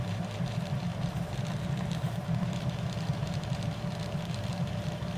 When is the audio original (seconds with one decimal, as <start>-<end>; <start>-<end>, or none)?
none